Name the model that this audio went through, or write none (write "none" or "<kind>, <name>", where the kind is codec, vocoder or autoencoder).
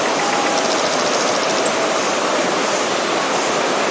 none